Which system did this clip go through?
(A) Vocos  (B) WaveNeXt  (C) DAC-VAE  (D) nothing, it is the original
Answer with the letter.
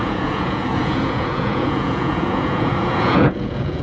A